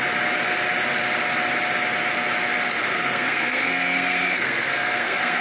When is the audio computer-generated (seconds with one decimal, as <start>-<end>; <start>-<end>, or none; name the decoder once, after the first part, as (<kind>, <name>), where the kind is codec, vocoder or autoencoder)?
2.9-5.4 (codec, SNAC)